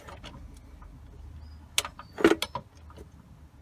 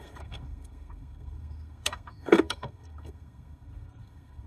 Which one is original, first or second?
first